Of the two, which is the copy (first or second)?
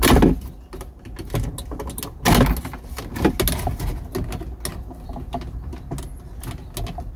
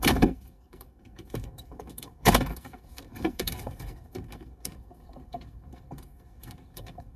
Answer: second